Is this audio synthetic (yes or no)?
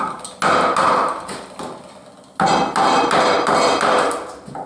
no